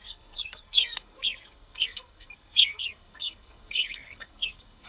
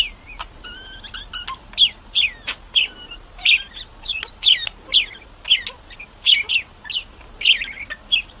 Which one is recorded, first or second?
second